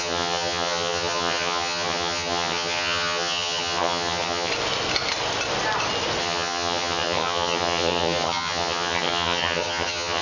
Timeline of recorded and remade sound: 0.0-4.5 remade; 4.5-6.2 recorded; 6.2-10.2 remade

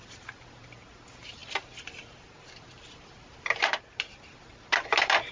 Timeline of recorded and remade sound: 0.0-5.3 recorded

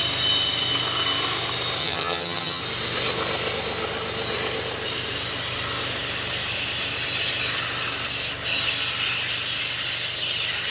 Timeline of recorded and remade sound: 0.0-1.8 recorded; 1.8-2.6 remade; 2.6-10.7 recorded